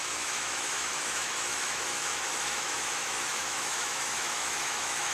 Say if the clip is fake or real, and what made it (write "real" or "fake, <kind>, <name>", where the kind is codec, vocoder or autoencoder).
fake, autoencoder, DAC-VAE